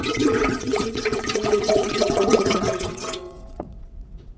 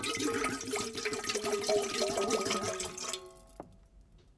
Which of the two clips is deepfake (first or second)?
first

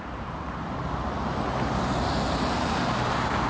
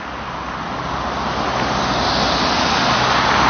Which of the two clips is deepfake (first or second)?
first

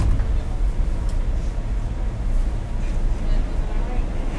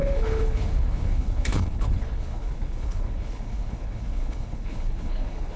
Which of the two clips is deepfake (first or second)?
second